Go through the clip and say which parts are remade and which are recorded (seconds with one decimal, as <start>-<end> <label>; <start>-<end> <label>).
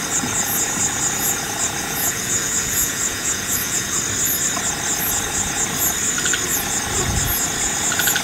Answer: 0.0-1.8 recorded; 1.8-4.0 remade; 4.0-8.2 recorded